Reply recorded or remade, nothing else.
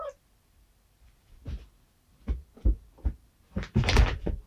recorded